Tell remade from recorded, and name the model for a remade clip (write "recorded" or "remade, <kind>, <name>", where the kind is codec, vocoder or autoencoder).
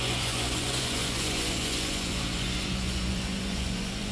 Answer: remade, vocoder, Vocos